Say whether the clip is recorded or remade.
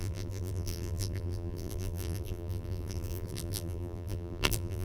remade